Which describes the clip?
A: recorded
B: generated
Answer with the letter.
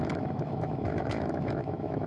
B